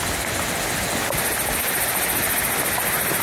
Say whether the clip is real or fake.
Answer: real